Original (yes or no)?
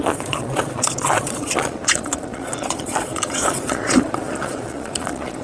no